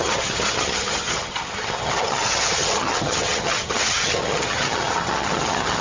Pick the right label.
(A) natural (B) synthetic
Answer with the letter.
B